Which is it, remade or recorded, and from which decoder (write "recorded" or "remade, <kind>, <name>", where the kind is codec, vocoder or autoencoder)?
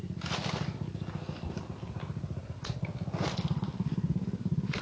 recorded